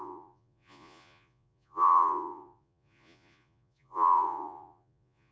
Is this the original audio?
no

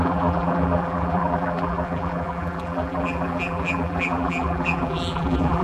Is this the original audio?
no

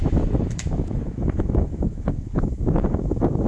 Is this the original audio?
no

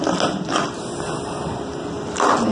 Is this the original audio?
yes